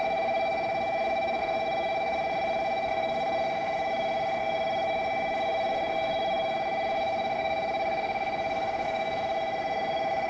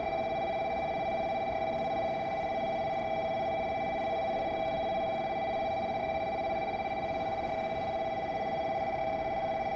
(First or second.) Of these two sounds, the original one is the second